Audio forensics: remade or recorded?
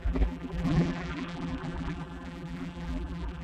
remade